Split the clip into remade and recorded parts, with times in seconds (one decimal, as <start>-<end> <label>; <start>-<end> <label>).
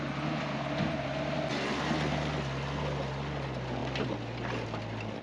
0.0-5.2 recorded